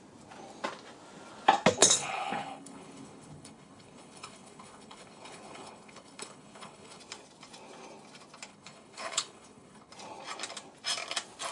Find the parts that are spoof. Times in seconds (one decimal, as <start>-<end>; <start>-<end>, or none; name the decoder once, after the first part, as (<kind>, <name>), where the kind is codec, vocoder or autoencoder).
1.8-7.0 (codec, HILCodec); 8.5-9.9